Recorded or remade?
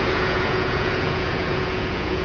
remade